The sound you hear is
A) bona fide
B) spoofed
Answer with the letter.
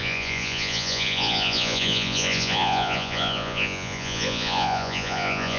B